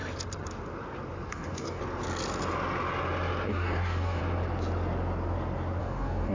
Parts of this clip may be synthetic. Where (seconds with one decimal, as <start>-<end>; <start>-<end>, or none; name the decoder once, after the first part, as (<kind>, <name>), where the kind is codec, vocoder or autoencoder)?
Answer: 1.3-1.8 (codec, DAC); 3.5-4.2; 5.8-6.3